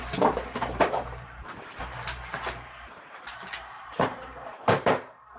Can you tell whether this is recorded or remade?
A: remade